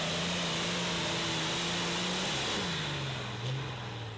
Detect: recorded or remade recorded